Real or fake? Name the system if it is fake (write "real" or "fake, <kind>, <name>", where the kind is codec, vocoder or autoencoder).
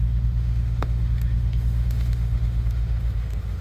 fake, autoencoder, DAC-VAE